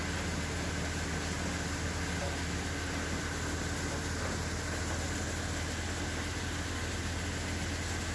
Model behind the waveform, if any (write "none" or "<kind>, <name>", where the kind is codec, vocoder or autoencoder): none